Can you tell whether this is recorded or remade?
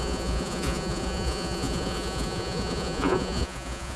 remade